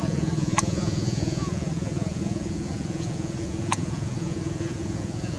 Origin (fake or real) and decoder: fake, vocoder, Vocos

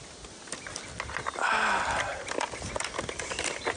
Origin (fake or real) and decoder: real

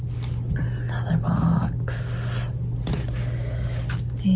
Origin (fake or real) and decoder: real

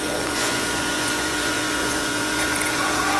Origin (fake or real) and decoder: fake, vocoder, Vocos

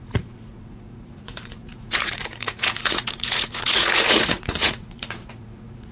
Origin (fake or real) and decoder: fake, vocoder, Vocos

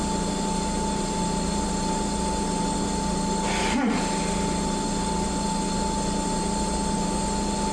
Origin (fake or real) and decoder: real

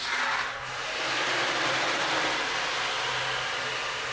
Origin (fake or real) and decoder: real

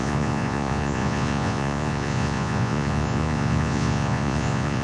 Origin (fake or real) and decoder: fake, vocoder, Vocos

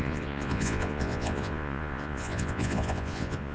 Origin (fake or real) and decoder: fake, vocoder, Vocos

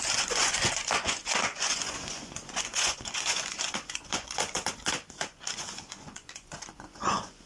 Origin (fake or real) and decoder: fake, vocoder, Vocos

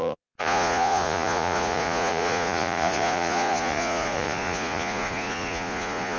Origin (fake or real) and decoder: fake, vocoder, Vocos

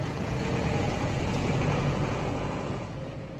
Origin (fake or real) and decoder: fake, vocoder, Vocos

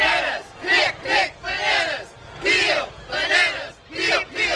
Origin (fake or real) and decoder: real